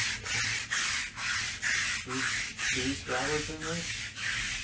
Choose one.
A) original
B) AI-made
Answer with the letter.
A